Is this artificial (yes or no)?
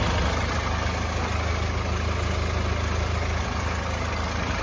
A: no